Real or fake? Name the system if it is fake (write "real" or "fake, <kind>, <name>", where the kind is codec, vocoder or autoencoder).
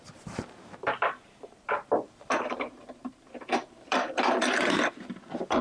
fake, vocoder, BigVGAN v2